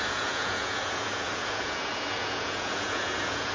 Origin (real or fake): fake